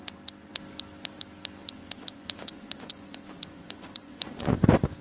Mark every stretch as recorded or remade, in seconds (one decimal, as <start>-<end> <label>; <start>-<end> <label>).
0.0-1.6 recorded; 1.6-4.6 remade; 4.6-5.0 recorded